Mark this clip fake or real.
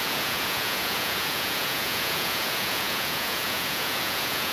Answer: fake